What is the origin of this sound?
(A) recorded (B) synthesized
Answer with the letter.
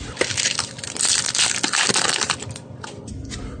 A